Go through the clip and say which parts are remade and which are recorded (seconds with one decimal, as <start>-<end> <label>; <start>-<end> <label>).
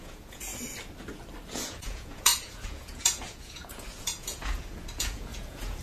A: 0.0-0.5 remade; 0.5-1.5 recorded; 1.5-5.8 remade